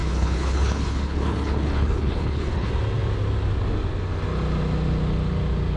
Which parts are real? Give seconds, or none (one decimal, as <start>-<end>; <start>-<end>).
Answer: 2.7-5.8